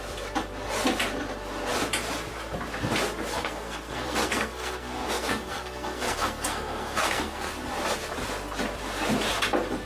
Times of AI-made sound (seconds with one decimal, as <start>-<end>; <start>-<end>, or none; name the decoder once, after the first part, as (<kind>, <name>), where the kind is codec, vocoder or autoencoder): 3.3-7.5 (codec, SNAC)